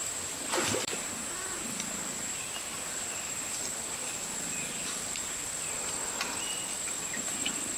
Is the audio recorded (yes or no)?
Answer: yes